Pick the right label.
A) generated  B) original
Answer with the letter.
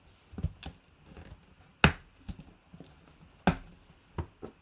B